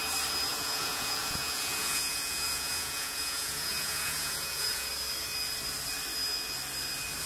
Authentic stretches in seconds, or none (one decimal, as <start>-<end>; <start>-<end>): 0.0-0.5; 4.9-7.3